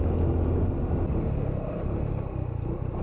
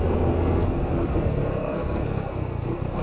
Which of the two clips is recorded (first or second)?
first